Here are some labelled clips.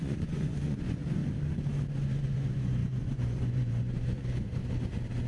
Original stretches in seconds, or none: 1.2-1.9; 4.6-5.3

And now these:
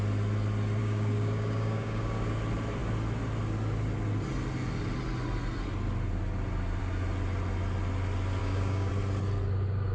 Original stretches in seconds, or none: 0.0-0.8; 2.3-8.4; 8.9-9.9